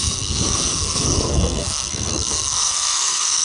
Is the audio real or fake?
fake